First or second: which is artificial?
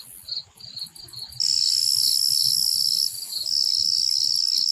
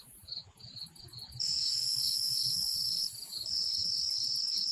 second